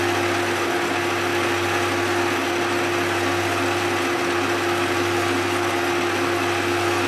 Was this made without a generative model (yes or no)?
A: yes